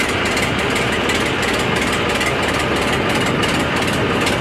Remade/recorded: recorded